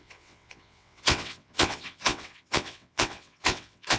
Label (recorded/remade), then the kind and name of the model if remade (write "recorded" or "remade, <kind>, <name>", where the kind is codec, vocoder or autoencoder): remade, vocoder, WaveNeXt